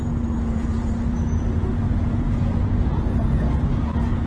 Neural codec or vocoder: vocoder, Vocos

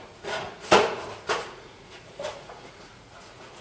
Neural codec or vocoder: vocoder, Vocos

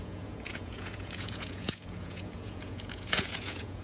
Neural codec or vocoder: vocoder, Vocos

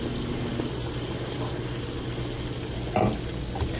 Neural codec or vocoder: none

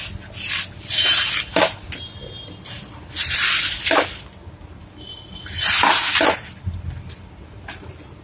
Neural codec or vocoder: none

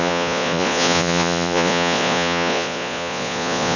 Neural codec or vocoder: vocoder, Vocos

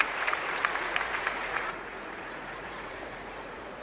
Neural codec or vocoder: vocoder, Vocos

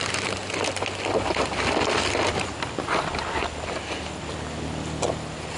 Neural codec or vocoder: none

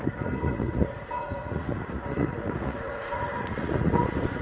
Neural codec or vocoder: vocoder, Vocos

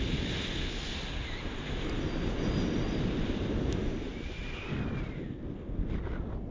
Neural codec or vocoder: none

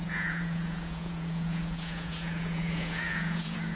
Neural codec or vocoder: vocoder, Vocos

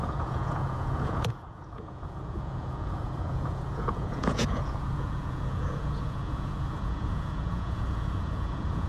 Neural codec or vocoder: vocoder, Vocos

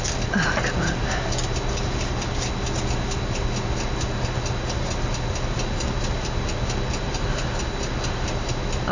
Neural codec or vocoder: none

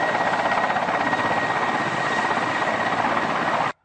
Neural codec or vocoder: none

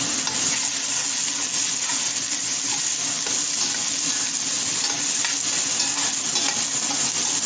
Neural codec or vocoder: none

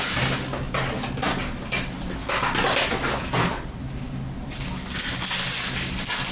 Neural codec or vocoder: none